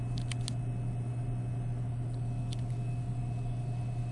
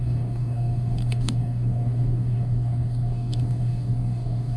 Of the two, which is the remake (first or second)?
second